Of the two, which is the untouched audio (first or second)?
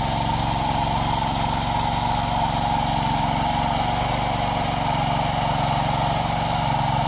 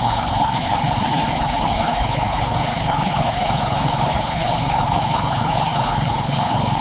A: first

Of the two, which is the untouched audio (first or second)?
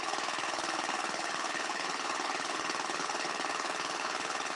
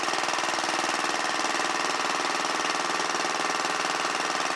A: second